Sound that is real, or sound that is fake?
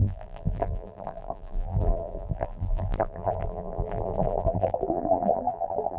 fake